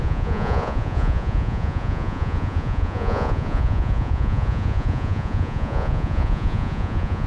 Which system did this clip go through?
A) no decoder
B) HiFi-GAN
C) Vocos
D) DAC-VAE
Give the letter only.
C